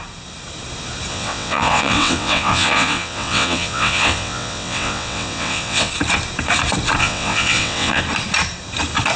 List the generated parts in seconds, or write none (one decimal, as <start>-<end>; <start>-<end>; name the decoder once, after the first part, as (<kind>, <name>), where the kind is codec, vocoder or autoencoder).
1.1-5.9 (vocoder, WaveNeXt); 7.0-8.0